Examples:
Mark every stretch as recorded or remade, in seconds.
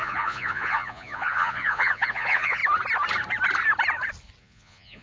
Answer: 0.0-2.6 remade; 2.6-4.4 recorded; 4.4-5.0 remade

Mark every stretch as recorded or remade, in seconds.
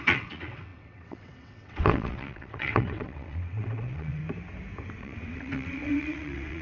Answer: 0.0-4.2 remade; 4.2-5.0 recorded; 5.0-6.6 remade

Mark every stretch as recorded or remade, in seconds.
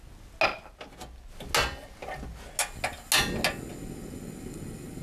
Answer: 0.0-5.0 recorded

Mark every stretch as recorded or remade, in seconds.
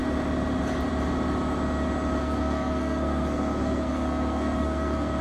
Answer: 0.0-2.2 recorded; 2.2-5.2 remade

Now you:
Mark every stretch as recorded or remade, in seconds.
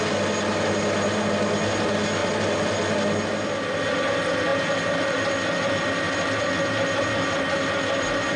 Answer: 0.0-8.4 recorded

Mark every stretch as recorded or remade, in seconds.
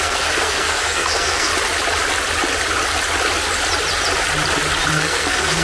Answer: 0.0-1.5 remade; 1.5-4.9 recorded; 4.9-5.6 remade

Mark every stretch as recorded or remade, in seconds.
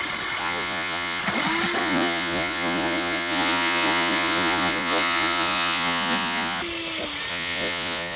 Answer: 0.0-0.4 recorded; 0.4-1.2 remade; 1.2-1.8 recorded; 1.8-6.6 remade; 6.6-7.3 recorded; 7.3-8.2 remade